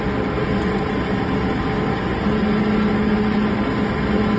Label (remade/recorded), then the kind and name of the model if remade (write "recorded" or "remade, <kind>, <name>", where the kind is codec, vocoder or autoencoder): recorded